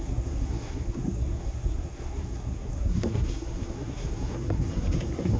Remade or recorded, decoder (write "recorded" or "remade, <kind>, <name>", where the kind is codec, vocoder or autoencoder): remade, codec, SNAC